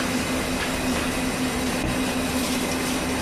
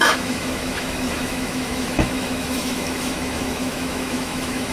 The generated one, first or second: second